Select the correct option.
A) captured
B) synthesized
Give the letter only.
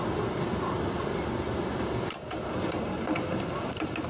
A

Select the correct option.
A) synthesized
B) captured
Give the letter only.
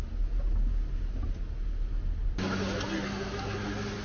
B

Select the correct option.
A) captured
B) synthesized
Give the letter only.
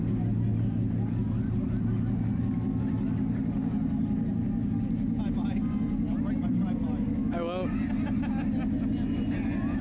A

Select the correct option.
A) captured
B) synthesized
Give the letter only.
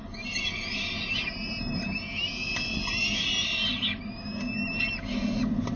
A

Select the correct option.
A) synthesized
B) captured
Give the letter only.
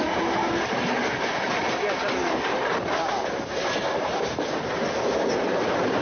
A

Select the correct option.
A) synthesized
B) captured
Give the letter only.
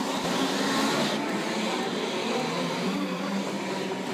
B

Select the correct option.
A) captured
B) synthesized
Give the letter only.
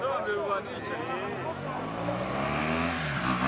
A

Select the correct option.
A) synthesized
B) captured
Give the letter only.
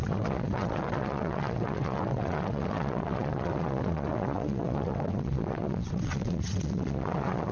A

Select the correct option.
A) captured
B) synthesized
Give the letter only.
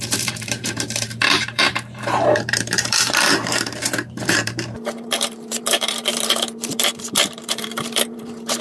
B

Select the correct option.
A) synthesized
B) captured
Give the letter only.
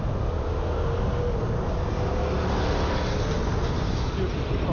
B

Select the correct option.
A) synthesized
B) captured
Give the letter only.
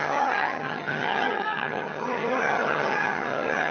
A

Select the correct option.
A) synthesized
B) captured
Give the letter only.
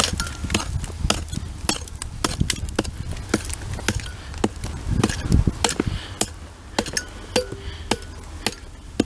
B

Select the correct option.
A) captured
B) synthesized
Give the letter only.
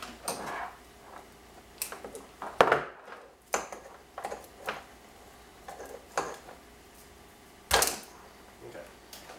A